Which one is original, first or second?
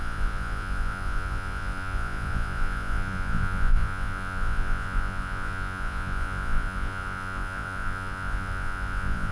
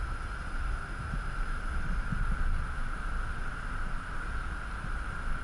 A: second